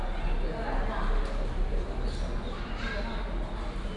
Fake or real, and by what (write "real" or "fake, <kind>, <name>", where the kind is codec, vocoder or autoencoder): real